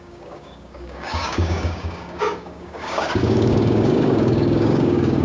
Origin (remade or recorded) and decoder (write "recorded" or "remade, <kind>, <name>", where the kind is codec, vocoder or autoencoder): remade, codec, DAC